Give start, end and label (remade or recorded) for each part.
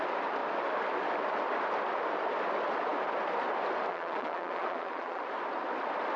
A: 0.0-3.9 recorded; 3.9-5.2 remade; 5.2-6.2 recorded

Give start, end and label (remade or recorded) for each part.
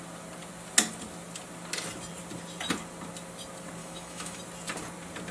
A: 0.0-3.8 recorded; 3.8-4.4 remade; 4.4-5.3 recorded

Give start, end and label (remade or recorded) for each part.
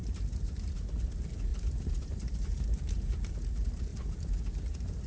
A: 0.0-0.9 remade; 0.9-1.5 recorded; 1.5-3.3 remade; 3.3-3.9 recorded; 3.9-4.5 remade; 4.5-5.1 recorded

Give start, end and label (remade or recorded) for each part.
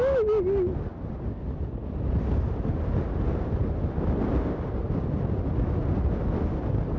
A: 0.0-7.0 recorded